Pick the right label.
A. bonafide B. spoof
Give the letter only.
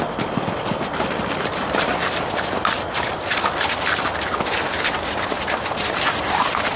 A